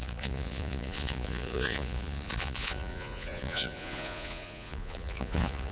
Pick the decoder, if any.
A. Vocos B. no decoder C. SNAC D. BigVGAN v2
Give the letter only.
A